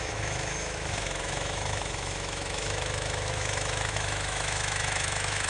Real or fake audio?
fake